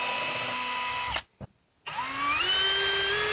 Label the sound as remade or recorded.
recorded